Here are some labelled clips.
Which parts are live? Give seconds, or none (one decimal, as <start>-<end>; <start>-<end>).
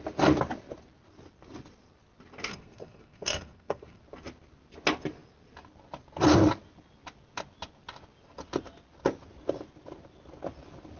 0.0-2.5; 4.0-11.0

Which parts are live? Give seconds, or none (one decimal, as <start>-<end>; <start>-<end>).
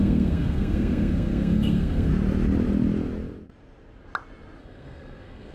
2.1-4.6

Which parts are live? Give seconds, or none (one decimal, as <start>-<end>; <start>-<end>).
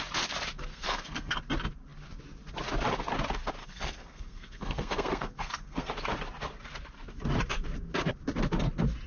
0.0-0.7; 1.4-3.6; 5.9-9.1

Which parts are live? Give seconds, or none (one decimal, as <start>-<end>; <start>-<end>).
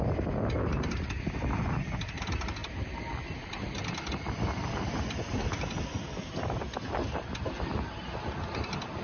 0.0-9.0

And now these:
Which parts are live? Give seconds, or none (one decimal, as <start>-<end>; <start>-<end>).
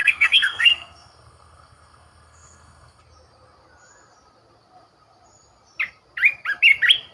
3.0-7.1